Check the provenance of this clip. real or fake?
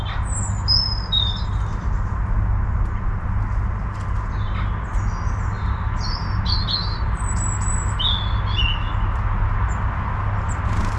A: real